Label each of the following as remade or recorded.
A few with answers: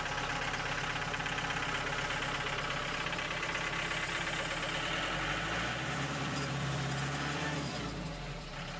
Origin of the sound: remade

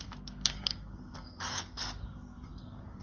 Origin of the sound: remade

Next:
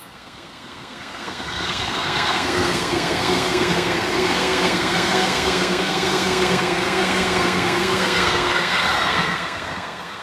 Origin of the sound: remade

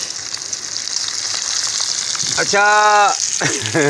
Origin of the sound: recorded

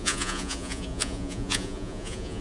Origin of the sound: remade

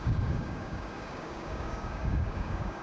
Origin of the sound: remade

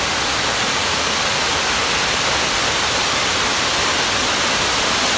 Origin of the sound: remade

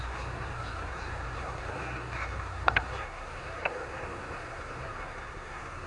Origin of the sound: remade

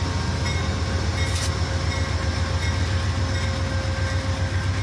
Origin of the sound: recorded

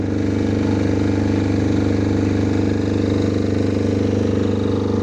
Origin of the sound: recorded